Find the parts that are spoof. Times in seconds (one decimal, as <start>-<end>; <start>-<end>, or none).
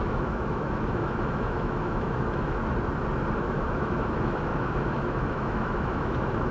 0.0-2.6; 3.4-6.5